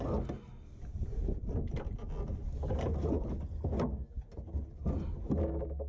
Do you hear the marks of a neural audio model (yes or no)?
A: no